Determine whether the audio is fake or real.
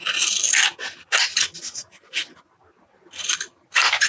real